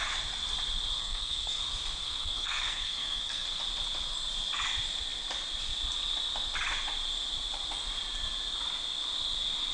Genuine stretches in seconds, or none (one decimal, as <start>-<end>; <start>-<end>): 0.0-1.0; 1.6-2.0; 3.6-9.7